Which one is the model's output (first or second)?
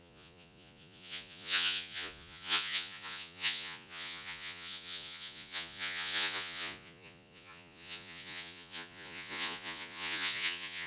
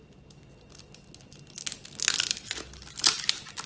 first